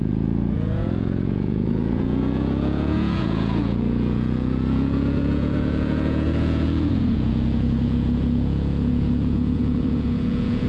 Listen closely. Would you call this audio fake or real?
fake